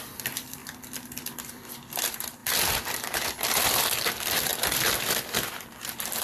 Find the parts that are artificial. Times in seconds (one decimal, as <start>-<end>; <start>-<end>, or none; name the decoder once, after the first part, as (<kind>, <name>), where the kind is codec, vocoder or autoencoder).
0.0-0.6 (vocoder, BigVGAN v2); 1.4-2.4; 3.4-6.2